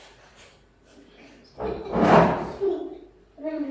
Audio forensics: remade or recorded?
remade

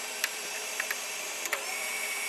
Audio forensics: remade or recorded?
remade